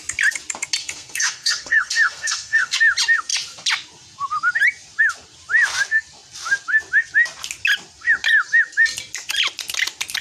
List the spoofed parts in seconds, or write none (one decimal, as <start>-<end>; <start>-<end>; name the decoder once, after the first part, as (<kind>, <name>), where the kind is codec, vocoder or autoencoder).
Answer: 0.8-2.8 (codec, SNAC)